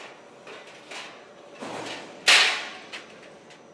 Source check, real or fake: real